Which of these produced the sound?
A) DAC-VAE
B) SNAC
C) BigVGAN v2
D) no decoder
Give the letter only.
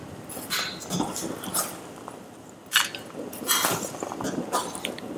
D